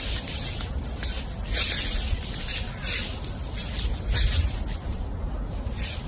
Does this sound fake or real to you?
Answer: real